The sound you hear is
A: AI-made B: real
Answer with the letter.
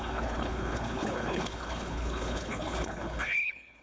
A